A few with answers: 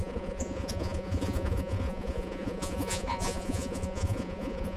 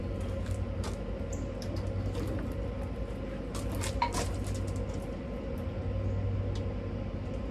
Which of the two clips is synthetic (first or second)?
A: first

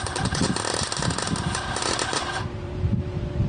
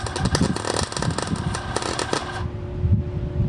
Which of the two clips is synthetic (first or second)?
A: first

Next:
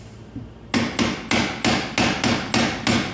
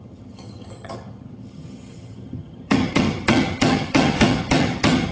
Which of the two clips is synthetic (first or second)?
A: second